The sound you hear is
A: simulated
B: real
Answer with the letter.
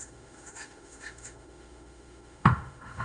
A